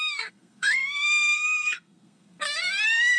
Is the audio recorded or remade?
remade